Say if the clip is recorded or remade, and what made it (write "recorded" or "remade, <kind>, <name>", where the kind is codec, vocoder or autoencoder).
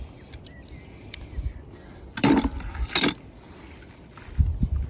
recorded